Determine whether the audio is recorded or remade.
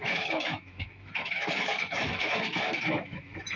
remade